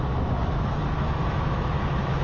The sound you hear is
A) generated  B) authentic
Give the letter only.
A